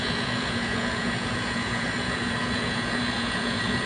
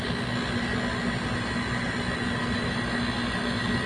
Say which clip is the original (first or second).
second